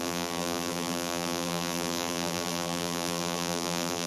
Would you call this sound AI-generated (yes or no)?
yes